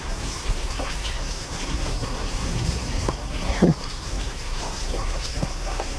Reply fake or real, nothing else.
fake